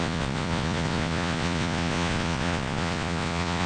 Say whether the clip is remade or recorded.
remade